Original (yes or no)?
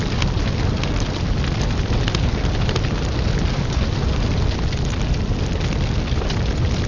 yes